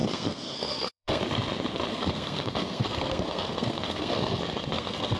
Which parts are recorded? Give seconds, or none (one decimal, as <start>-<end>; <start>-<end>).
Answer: 1.2-1.9